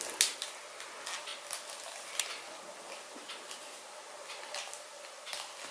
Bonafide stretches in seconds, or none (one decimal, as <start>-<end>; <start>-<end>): 0.0-5.7